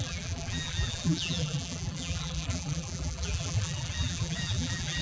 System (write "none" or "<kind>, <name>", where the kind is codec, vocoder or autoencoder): vocoder, BigVGAN v2